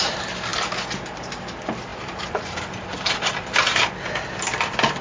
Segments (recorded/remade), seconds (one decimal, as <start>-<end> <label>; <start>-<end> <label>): 0.0-5.0 recorded